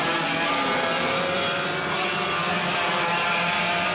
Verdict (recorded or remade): recorded